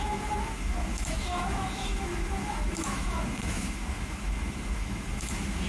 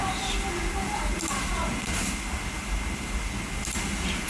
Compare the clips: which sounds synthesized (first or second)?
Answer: first